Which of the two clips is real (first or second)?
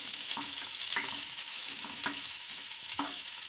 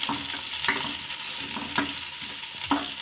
second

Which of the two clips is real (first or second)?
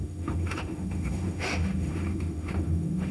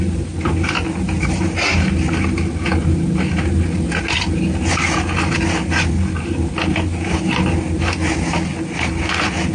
second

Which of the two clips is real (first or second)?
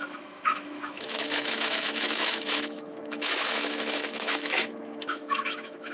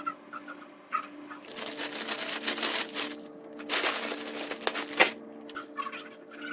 second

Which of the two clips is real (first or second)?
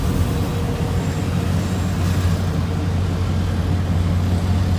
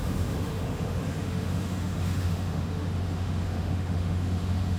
first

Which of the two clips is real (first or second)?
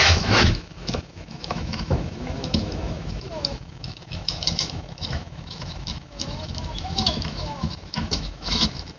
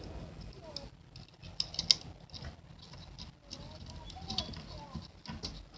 second